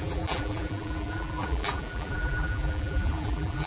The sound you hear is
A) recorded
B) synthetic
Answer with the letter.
B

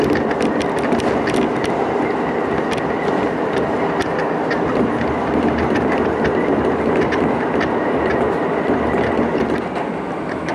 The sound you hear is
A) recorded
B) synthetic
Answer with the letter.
A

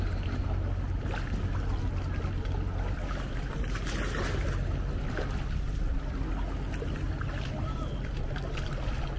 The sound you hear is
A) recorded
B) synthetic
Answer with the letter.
A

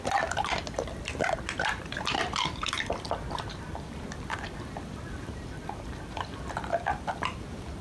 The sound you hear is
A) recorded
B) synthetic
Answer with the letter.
B